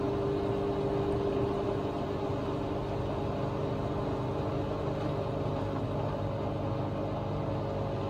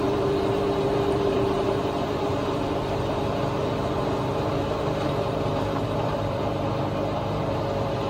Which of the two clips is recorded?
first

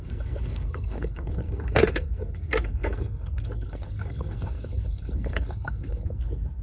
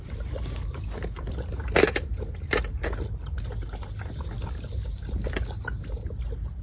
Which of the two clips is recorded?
second